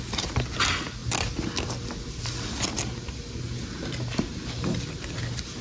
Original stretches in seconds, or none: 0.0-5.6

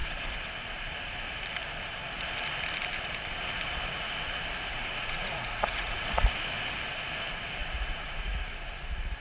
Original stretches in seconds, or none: 0.0-4.7; 6.2-7.6; 8.5-9.2

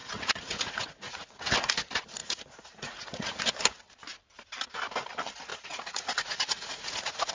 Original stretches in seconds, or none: 1.5-2.2; 3.4-5.5

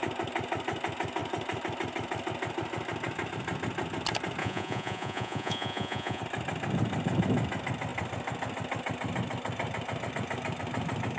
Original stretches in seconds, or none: 0.0-4.4; 6.2-11.2

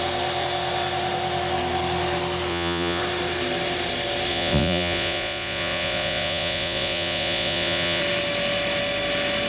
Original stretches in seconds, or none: 0.0-2.5; 3.0-4.3; 8.0-9.5

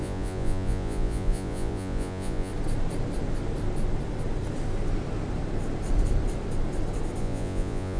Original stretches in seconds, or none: 2.5-7.2

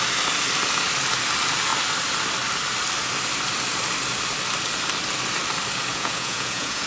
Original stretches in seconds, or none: 0.0-5.9